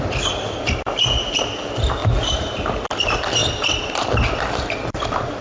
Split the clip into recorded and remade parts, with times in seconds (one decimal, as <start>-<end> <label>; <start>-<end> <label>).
0.0-2.0 recorded; 2.0-2.8 remade; 2.8-5.4 recorded